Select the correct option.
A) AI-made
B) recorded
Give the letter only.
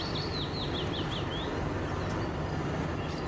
B